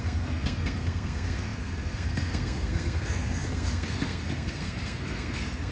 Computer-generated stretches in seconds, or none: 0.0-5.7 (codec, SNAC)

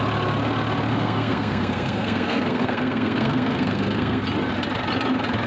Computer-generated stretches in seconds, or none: 0.9-4.2 (codec, SNAC)

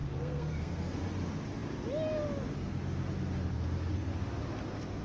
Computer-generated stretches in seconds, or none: 0.0-1.0 (codec, SNAC)